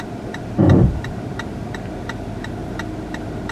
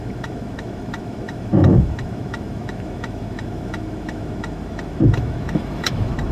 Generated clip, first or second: second